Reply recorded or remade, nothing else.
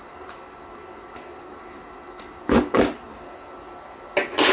recorded